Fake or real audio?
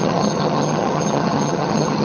fake